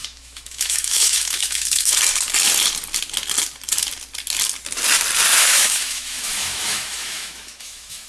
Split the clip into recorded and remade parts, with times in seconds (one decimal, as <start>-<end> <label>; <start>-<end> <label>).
0.0-2.0 remade; 2.0-5.3 recorded; 5.3-8.1 remade